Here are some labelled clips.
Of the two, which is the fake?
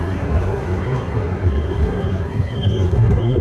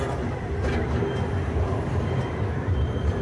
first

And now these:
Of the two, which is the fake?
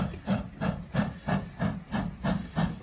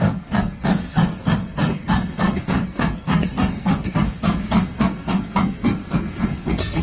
second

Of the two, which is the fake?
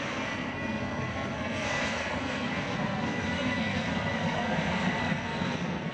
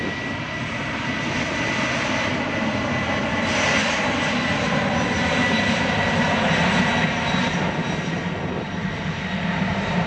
first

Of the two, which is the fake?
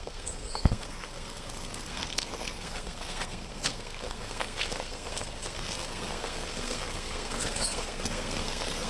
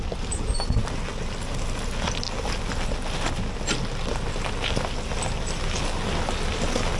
first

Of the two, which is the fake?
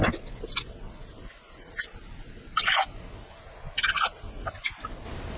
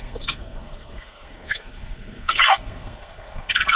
second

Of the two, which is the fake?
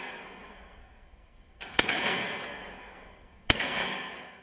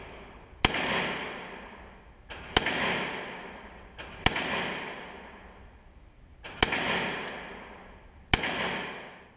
first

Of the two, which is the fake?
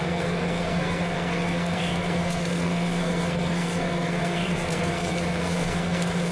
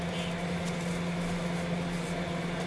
first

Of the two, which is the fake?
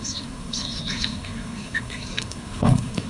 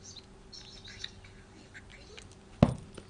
first